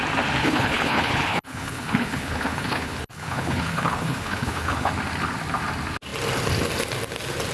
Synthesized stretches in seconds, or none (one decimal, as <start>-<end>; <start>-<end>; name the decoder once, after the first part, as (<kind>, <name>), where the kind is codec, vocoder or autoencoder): 0.4-4.9 (codec, HILCodec)